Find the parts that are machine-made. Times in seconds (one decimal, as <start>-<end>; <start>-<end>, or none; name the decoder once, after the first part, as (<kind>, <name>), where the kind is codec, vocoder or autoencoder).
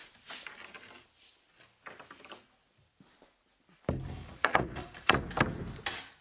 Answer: 4.2-5.2 (vocoder, Vocos)